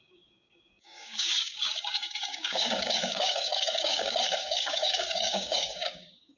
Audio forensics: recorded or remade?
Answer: remade